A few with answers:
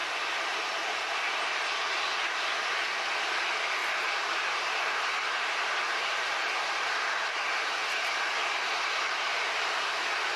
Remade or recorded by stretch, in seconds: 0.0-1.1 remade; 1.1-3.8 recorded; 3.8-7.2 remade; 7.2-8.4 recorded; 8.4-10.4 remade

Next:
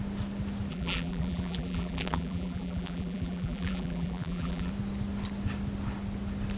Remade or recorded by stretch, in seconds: 0.0-0.7 recorded; 0.7-4.7 remade; 4.7-6.6 recorded

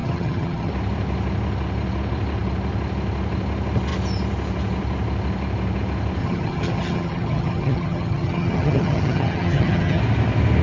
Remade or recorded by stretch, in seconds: 0.0-0.7 remade; 0.7-6.2 recorded; 6.2-10.0 remade; 10.0-10.6 recorded